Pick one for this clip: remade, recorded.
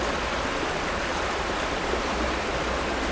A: recorded